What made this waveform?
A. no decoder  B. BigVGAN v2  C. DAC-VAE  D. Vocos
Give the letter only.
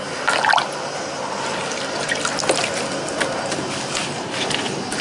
A